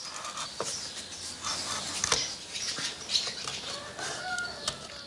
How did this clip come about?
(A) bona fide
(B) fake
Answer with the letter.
A